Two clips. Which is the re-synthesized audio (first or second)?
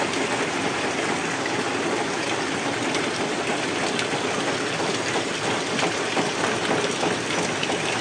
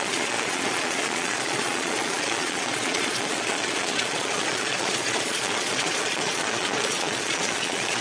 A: second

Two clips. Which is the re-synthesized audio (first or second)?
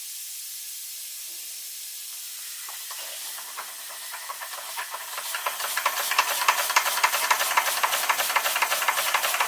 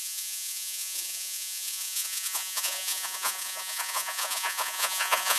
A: second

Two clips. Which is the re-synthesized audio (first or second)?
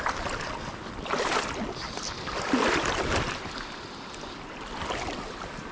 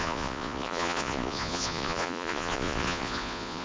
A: second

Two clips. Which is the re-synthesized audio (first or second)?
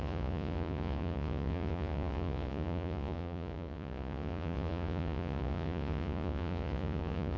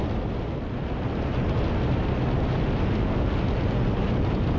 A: first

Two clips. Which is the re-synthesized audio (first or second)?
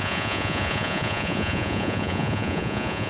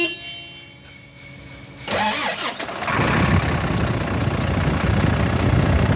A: first